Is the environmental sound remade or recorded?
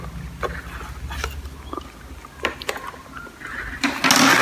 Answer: recorded